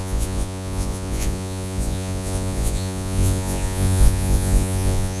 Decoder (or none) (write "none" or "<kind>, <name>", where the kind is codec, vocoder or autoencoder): vocoder, Vocos